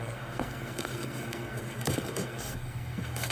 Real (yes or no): no